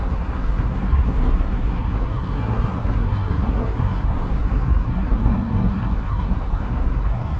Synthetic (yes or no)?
yes